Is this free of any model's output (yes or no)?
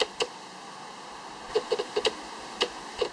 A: no